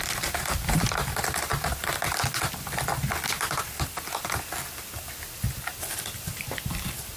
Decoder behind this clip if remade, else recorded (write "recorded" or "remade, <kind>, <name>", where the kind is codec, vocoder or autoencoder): recorded